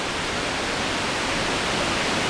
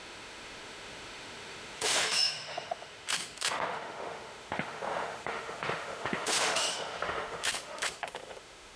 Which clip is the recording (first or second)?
first